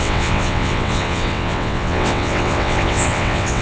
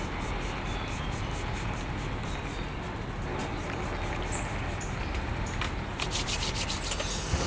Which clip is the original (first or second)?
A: second